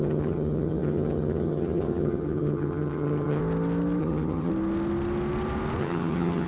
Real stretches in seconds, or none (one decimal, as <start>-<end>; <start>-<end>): 3.4-4.0; 4.5-5.8